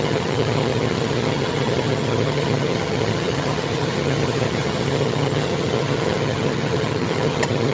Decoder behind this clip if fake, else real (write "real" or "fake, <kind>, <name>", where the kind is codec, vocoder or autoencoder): fake, vocoder, HiFi-GAN